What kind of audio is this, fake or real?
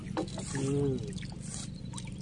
real